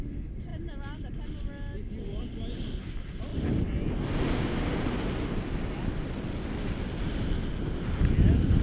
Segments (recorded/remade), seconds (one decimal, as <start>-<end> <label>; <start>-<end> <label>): 0.0-8.6 recorded